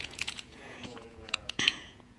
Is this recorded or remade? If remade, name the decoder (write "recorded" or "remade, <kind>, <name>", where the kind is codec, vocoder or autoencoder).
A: remade, vocoder, Vocos